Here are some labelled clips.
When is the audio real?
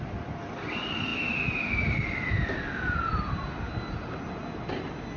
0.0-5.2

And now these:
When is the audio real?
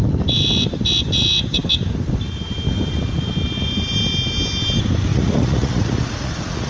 0.0-5.1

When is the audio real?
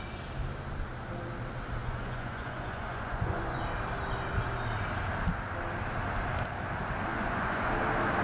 0.0-1.8; 3.6-7.1; 7.7-8.2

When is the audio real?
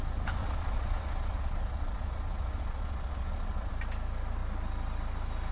0.0-0.4; 3.7-5.5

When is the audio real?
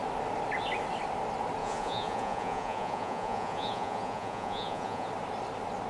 0.0-1.6; 5.1-5.9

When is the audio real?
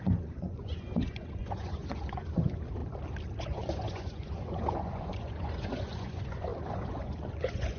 2.8-3.4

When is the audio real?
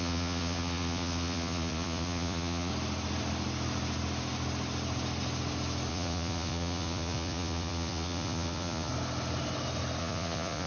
2.7-5.9; 8.9-10.0